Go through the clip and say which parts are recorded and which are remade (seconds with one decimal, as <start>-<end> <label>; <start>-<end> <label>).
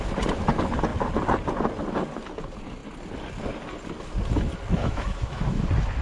0.0-4.8 recorded; 4.8-5.6 remade; 5.6-6.0 recorded